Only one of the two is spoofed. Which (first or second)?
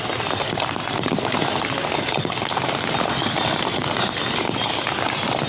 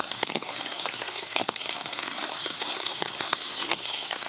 second